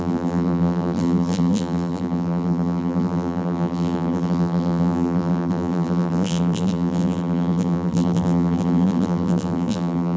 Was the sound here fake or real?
fake